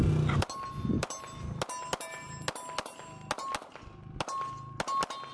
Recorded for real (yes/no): yes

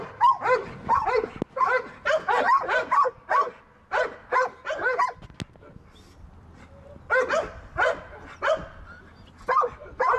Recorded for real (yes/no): yes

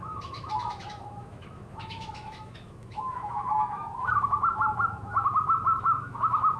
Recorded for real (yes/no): no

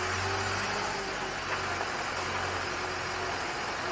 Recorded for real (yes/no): yes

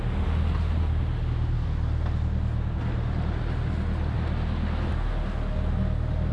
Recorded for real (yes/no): yes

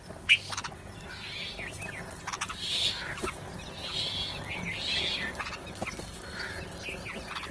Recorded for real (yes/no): yes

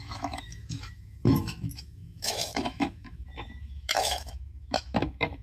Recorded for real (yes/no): no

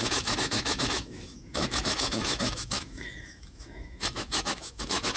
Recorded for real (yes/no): no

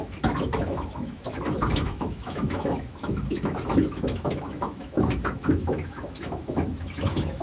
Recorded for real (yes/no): no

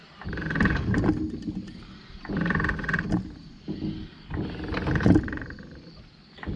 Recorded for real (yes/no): yes